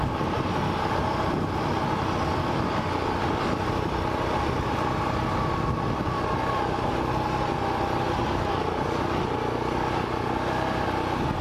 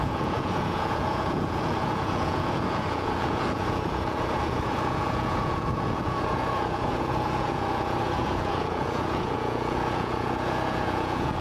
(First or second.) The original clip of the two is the first